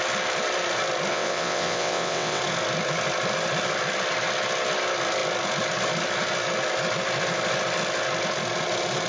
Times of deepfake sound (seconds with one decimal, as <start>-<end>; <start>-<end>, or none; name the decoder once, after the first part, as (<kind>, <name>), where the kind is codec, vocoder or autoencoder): 1.1-2.4 (vocoder, WaveNeXt)